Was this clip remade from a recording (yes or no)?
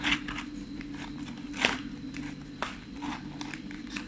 no